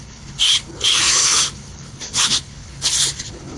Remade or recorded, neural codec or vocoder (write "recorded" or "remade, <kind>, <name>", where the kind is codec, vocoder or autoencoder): remade, codec, HILCodec